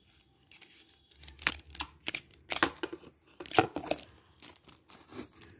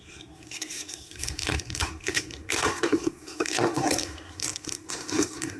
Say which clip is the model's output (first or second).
second